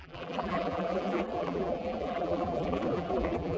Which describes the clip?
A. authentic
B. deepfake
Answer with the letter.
B